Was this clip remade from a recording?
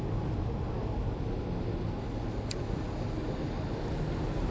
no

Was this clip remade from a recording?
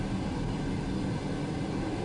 no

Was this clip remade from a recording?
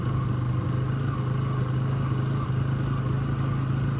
no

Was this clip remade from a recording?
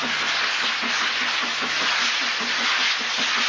no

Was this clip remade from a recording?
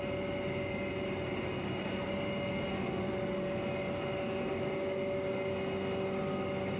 no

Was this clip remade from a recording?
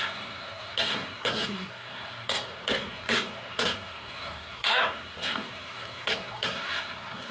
yes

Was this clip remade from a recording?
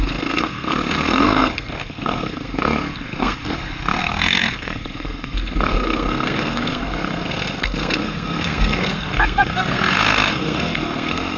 yes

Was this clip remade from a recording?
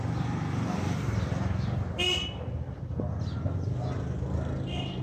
no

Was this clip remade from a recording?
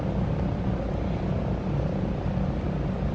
no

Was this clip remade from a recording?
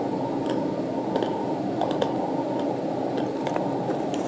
no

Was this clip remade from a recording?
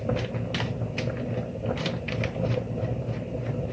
no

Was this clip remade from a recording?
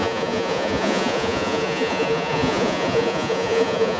yes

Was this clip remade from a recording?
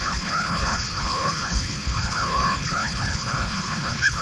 yes